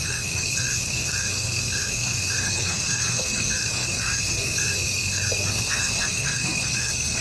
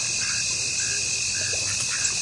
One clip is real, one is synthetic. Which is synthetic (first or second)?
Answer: first